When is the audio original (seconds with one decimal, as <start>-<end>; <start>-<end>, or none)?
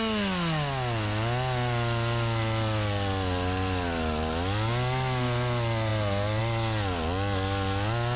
0.0-8.2